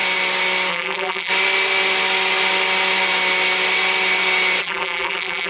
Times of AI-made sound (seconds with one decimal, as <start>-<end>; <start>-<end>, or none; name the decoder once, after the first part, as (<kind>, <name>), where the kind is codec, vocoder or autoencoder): 0.7-1.3 (vocoder, BigVGAN v2); 4.6-5.5